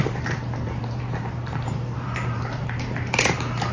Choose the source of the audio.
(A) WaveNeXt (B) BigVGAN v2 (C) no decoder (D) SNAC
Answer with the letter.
B